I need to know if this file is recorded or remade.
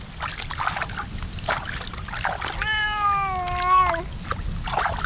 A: recorded